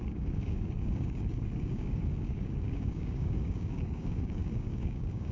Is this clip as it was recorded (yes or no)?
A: no